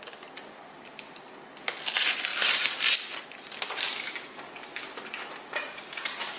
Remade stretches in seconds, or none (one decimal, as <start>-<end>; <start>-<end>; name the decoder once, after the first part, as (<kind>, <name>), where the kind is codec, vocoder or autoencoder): none